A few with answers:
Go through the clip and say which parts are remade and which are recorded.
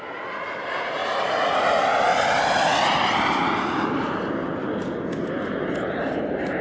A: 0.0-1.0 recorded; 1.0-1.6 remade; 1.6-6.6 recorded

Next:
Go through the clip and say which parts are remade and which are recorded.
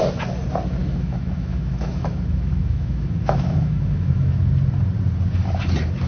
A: 0.0-0.8 recorded; 0.8-4.5 remade; 4.5-6.1 recorded